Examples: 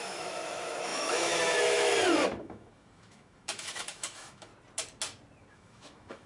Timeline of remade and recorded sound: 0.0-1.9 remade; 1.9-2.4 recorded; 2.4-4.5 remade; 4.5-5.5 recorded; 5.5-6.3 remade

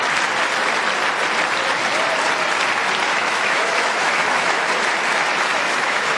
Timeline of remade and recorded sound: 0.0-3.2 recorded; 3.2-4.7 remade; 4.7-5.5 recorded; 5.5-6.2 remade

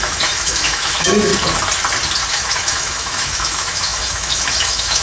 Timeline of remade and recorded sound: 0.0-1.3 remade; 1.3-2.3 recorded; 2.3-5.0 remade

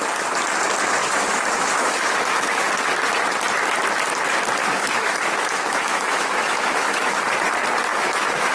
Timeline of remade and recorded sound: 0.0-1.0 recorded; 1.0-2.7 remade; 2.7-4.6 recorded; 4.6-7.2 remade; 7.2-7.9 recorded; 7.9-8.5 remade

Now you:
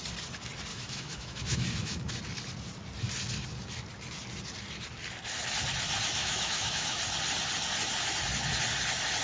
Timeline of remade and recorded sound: 0.0-0.7 recorded; 0.7-2.2 remade; 2.2-6.2 recorded; 6.2-7.0 remade; 7.0-9.2 recorded

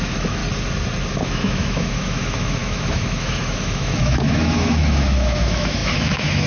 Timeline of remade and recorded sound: 0.0-0.4 remade; 0.4-1.1 recorded; 1.1-6.5 remade